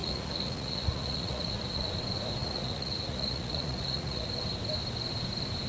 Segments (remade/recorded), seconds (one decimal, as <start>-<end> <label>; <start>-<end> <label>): 0.0-1.9 remade; 1.9-2.4 recorded; 2.4-4.3 remade; 4.3-5.7 recorded